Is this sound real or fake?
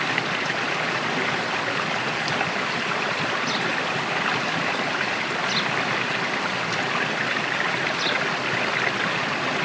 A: real